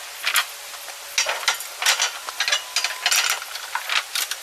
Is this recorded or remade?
recorded